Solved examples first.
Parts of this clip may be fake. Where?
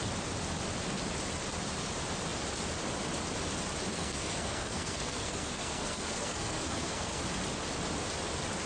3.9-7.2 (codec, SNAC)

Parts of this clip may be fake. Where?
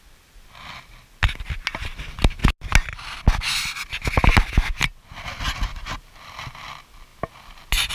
none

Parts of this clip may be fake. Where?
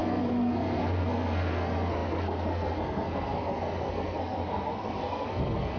0.0-5.8 (codec, SNAC)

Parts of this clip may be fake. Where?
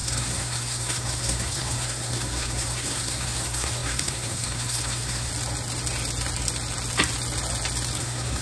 0.0-5.3 (codec, SNAC); 8.0-8.4